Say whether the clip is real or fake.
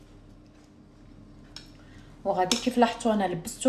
real